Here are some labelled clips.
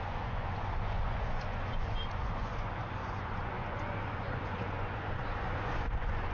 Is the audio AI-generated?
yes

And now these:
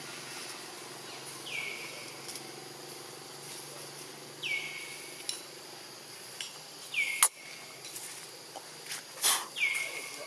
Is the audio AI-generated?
no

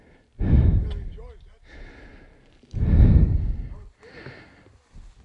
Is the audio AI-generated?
no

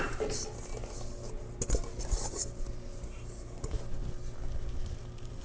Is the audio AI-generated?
no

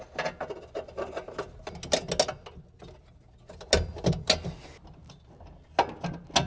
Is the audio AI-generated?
no